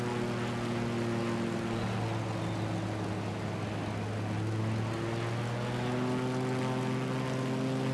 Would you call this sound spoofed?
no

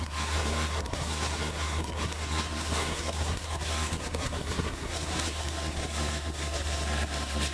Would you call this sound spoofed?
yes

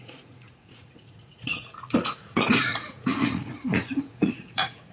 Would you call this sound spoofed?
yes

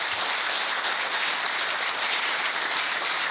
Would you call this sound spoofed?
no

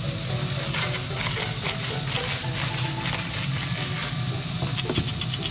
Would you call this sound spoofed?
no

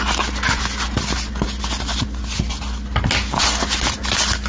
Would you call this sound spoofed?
no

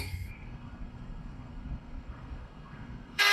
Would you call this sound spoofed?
yes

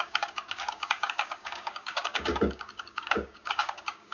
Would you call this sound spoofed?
yes